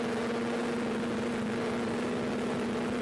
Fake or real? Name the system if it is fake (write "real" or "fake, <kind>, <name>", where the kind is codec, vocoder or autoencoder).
real